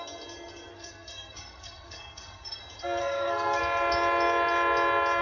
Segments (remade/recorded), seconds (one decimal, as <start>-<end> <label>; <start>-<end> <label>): 0.0-0.7 recorded; 0.7-2.6 remade; 2.6-3.0 recorded; 3.0-3.6 remade; 3.6-5.2 recorded